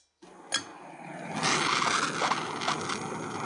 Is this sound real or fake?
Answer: real